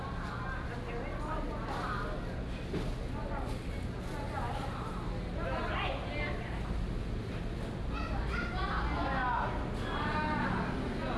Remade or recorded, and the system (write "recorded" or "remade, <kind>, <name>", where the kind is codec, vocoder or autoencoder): recorded